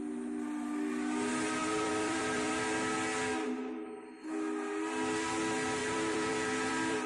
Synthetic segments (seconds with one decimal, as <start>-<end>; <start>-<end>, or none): 1.6-2.5; 5.8-7.1